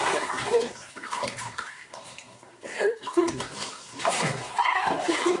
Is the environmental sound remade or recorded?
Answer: remade